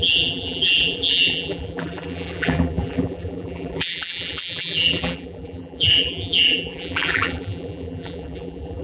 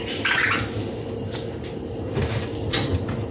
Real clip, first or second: second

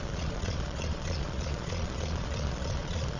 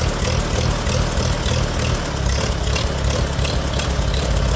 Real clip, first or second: second